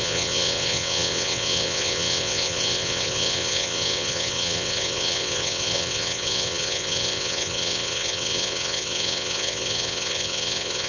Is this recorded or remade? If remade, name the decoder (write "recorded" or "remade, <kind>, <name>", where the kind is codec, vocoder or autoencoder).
remade, vocoder, WaveNeXt